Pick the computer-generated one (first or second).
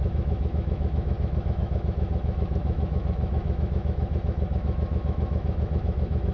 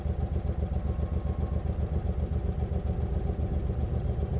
first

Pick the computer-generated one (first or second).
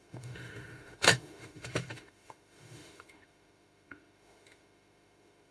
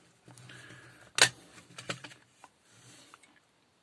first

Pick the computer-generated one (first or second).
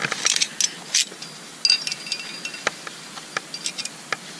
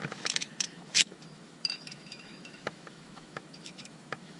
second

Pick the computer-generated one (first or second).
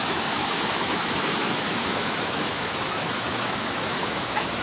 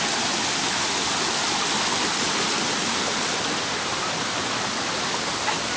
first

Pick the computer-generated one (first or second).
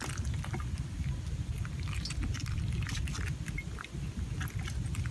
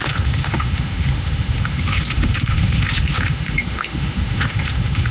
second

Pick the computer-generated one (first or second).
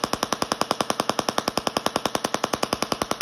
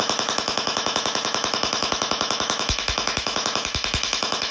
second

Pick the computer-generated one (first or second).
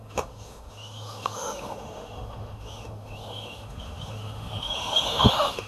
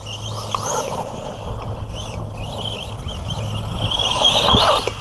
first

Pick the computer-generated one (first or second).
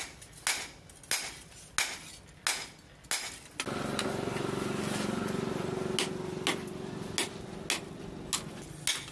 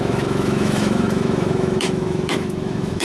second